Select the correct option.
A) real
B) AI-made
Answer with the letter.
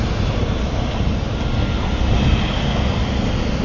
A